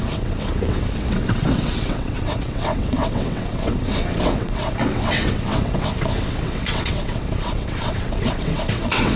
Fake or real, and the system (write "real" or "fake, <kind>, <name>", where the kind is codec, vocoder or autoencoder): fake, vocoder, WaveNeXt